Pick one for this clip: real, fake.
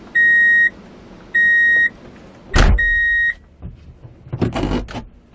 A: real